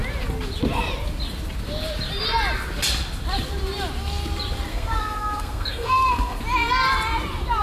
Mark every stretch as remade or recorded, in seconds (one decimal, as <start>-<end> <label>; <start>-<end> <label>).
0.0-4.7 recorded; 4.7-6.4 remade; 6.4-7.6 recorded